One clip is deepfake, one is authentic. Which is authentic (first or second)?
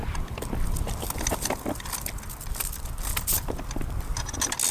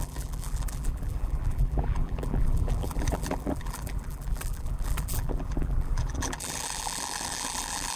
first